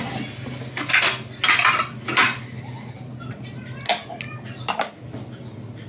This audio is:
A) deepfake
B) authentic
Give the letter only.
B